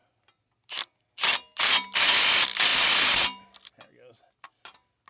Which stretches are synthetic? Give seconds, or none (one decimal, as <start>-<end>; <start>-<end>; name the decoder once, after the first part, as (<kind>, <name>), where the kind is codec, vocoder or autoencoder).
none